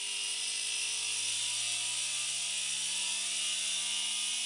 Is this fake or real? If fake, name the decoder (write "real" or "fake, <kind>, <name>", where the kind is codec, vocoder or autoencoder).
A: real